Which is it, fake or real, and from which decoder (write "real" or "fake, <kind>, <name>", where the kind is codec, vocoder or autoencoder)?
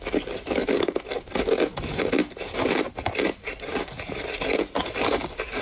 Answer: fake, vocoder, BigVGAN v2